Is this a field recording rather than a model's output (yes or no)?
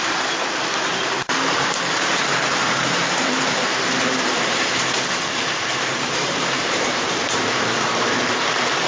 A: no